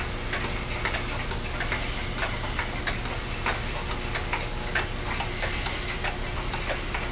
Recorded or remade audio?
recorded